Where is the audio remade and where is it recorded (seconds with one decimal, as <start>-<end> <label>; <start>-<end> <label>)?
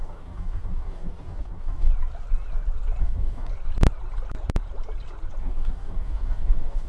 0.0-1.9 remade; 1.9-3.0 recorded; 3.0-3.5 remade; 3.5-5.4 recorded; 5.4-6.9 remade